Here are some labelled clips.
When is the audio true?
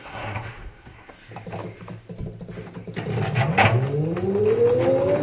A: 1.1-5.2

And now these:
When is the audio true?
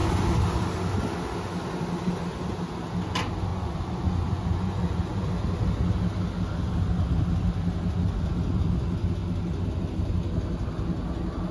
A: 0.0-3.5; 5.3-11.5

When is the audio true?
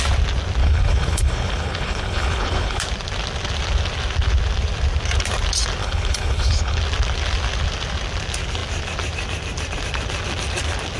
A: 0.0-0.6; 2.8-5.8; 6.8-11.0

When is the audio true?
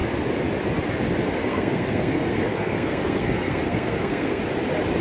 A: 0.0-1.4; 4.4-5.0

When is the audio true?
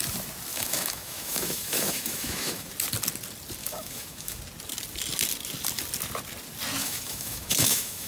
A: 0.0-0.5; 2.7-3.6; 4.4-6.8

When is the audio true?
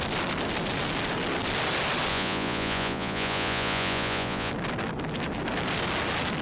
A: 0.0-2.1; 4.5-6.4